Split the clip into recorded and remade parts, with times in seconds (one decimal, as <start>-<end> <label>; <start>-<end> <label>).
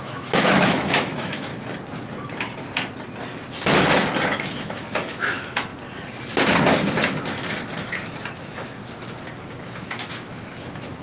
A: 0.0-1.5 remade; 1.5-4.5 recorded; 4.5-5.7 remade; 5.7-8.4 recorded; 8.4-8.8 remade; 8.8-9.4 recorded; 9.4-11.0 remade